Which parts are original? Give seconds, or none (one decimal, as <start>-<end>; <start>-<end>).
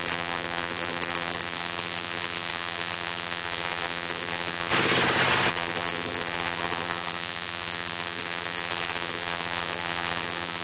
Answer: 4.7-5.5